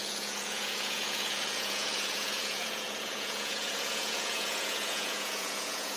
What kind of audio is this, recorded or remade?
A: remade